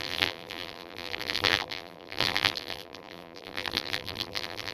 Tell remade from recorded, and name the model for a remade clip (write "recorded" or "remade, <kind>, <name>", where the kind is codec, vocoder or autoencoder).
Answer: remade, vocoder, BigVGAN v2